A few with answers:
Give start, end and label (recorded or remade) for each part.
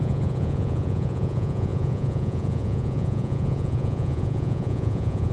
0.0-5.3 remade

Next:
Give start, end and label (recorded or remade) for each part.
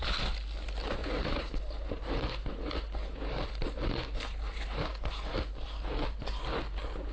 0.0-1.0 recorded; 1.0-1.5 remade; 1.5-7.1 recorded